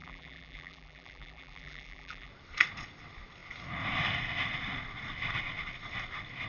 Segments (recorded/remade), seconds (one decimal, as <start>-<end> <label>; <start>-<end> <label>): 0.0-2.3 remade; 2.3-6.5 recorded